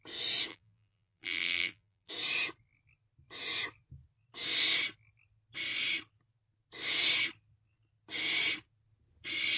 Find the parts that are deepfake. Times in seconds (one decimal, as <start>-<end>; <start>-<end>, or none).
0.5-2.1